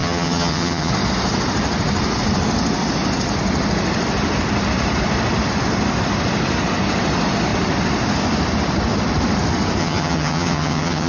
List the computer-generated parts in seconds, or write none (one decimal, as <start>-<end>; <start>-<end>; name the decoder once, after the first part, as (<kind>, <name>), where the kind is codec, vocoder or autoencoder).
0.0-0.9 (vocoder, HiFi-GAN); 9.8-11.1